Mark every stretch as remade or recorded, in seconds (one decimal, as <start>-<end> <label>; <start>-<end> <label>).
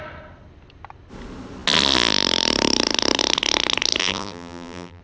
0.0-4.0 recorded; 4.0-5.0 remade